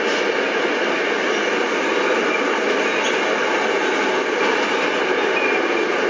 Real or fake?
real